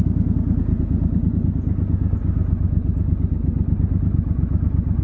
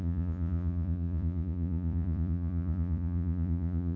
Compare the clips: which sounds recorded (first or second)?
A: first